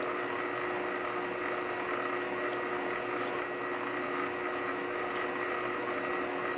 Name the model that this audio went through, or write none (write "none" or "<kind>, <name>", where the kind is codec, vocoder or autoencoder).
none